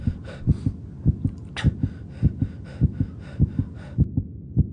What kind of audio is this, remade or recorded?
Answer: recorded